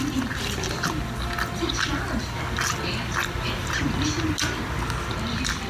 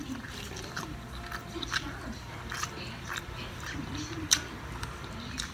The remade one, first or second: second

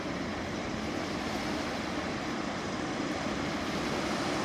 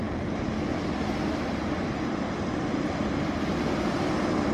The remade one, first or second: first